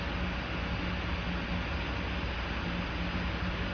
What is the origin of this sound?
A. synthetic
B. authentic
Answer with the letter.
B